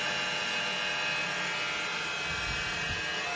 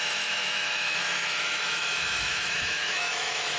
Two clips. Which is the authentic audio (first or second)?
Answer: first